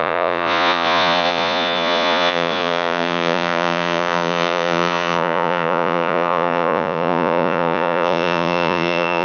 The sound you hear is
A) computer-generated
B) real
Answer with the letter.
A